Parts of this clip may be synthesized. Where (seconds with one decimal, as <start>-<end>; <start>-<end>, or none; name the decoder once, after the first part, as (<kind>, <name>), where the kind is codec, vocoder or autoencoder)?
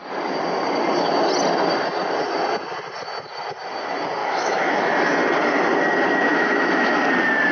4.2-4.8 (autoencoder, DAC-VAE); 6.3-7.0